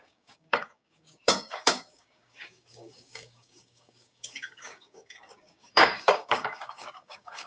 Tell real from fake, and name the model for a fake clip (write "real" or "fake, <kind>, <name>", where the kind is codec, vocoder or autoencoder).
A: fake, codec, DAC